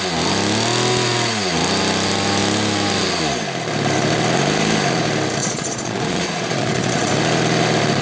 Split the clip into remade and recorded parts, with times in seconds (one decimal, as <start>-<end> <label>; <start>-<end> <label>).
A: 0.0-5.4 recorded; 5.4-7.1 remade; 7.1-8.0 recorded